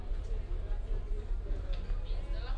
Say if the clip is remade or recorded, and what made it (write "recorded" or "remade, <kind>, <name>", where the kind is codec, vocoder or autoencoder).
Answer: recorded